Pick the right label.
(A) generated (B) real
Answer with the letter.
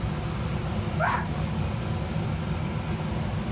B